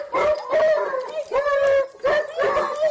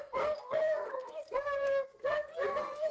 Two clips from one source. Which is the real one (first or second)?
first